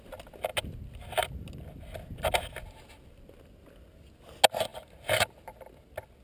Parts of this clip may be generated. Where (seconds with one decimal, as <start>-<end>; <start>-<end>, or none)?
none